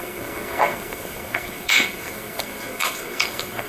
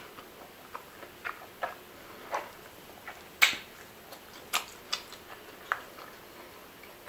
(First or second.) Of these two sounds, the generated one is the first